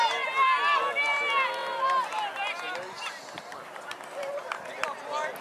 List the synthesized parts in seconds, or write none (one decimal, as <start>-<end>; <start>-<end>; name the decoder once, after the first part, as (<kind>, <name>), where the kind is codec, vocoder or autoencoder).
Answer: none

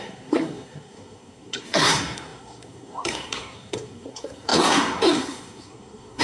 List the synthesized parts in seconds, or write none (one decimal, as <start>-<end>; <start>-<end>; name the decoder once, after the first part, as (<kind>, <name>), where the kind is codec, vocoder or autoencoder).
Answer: 0.0-6.2 (codec, SNAC)

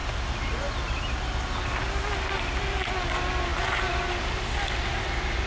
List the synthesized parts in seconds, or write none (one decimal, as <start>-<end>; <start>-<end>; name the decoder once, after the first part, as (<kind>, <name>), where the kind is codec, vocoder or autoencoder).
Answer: none

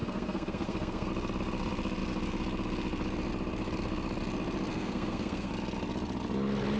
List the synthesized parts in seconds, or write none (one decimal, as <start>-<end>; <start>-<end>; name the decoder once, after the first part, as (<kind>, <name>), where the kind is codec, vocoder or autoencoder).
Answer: 0.0-1.1 (codec, SNAC); 4.7-5.5

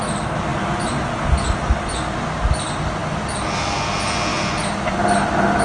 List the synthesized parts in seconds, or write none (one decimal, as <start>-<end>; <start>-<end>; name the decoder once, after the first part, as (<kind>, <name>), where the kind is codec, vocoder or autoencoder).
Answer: none

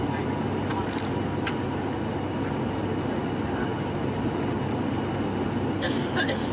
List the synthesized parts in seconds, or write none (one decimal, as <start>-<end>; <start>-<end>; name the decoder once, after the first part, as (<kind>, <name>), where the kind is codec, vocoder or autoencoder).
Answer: none

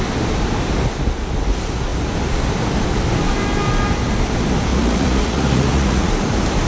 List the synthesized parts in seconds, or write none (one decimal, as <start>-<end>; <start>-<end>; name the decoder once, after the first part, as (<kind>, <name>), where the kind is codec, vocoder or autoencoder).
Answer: 4.7-6.1 (vocoder, Vocos)

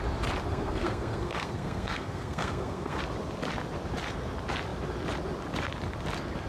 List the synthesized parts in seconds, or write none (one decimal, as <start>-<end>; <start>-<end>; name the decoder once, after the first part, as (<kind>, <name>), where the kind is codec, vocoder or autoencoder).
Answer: 0.5-3.0 (codec, SNAC)